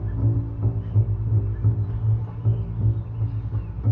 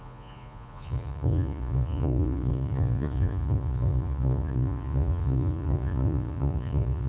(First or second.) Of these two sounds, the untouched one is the first